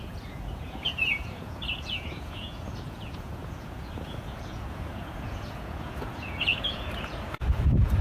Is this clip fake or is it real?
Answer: fake